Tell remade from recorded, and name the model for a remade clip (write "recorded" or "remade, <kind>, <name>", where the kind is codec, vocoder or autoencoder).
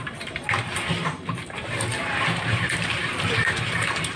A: remade, vocoder, BigVGAN v2